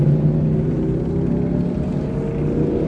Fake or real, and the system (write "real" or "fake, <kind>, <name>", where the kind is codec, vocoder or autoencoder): real